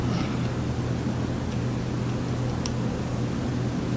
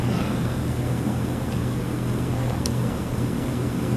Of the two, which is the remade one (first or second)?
second